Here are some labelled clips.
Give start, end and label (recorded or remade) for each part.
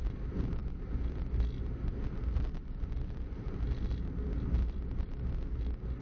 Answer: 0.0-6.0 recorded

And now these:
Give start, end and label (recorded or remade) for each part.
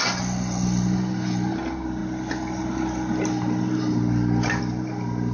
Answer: 0.0-5.3 recorded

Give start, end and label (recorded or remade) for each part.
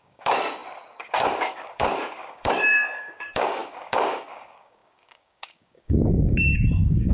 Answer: 0.0-7.1 remade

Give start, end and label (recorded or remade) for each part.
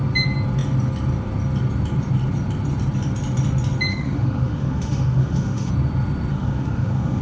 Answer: 0.0-3.9 recorded; 3.9-5.7 remade; 5.7-6.3 recorded; 6.3-7.2 remade